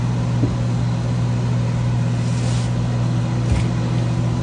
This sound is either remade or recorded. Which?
recorded